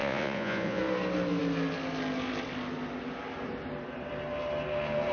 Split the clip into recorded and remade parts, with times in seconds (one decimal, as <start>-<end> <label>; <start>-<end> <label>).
0.0-0.8 remade; 0.8-5.1 recorded